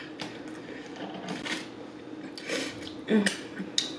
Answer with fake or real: real